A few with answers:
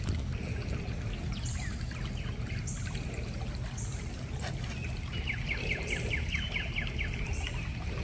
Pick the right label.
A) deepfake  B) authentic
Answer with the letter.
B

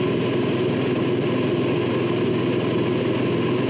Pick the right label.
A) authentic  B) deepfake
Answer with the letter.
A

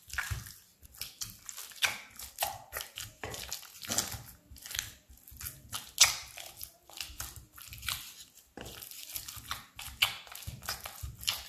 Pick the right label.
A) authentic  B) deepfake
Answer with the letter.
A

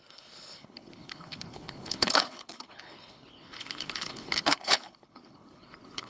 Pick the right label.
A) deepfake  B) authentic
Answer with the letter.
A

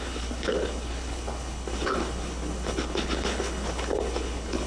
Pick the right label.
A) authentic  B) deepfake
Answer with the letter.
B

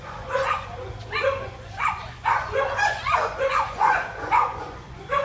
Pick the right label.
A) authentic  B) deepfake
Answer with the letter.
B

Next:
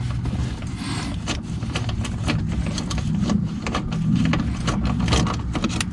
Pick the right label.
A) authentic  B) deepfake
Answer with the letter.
A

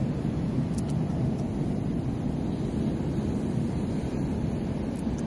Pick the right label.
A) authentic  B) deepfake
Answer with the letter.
A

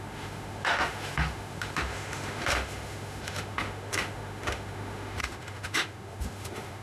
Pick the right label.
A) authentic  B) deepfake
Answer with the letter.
B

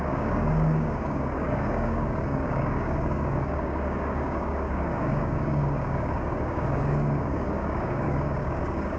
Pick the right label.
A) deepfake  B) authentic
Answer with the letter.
A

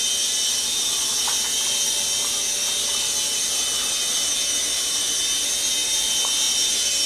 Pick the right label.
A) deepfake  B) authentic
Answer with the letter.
B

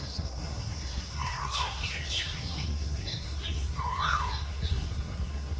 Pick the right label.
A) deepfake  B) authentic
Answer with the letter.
A